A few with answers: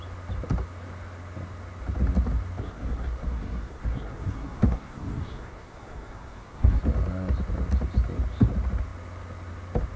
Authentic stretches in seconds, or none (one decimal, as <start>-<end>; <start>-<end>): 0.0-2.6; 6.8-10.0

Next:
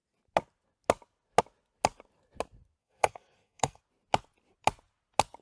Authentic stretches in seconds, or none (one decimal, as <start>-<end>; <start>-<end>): 0.0-2.8; 3.8-5.4

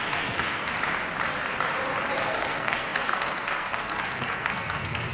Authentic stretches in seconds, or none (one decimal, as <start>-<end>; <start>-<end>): 0.7-2.2

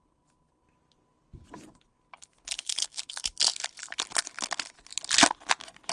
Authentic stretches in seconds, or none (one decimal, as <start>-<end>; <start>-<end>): 0.0-5.9

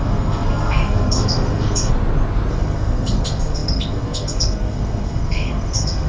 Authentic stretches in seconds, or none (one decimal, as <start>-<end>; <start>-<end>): 1.9-2.5

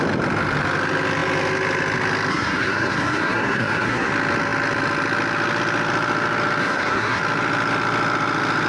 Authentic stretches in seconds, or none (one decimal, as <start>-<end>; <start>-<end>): 0.0-2.3; 4.1-6.6; 7.2-8.7

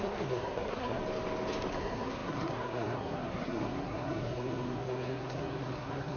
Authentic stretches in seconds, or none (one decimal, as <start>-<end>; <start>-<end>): 1.0-1.7

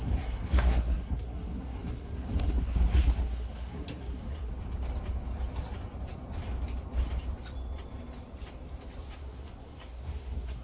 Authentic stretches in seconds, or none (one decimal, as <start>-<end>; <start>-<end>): 4.5-9.1